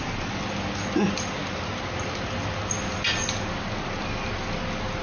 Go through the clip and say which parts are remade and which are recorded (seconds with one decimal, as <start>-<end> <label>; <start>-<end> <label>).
0.0-5.0 recorded